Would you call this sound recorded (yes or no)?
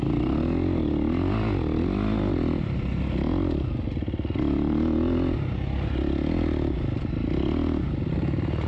yes